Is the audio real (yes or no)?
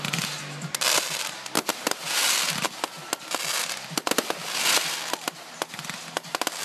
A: yes